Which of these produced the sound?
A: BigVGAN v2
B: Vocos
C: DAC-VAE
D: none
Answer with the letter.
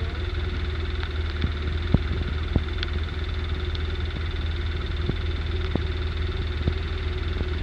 D